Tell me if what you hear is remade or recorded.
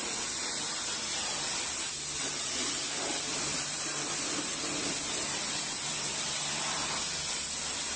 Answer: recorded